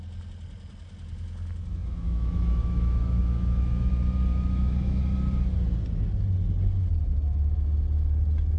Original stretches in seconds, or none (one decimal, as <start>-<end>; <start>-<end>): 0.0-1.8; 3.9-4.3; 5.0-8.6